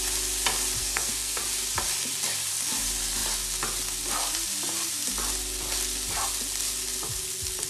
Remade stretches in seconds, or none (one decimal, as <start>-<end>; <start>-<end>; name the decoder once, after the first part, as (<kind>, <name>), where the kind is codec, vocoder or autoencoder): 0.8-1.4 (codec, SNAC)